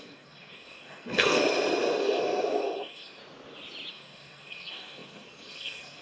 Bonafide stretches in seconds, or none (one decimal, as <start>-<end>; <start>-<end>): 1.4-2.0; 3.2-3.9